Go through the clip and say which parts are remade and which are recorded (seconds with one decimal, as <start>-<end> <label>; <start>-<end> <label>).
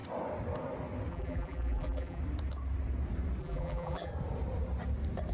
0.0-1.1 recorded; 1.1-2.2 remade; 2.2-3.4 recorded; 3.4-4.1 remade; 4.1-5.3 recorded